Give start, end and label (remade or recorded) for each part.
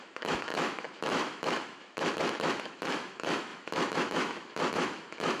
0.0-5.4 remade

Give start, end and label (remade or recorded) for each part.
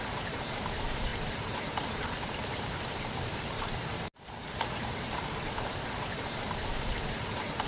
0.0-7.7 remade